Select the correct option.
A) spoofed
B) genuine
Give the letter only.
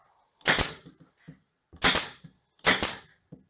B